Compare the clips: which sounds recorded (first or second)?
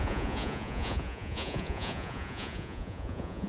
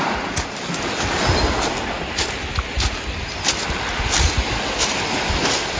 second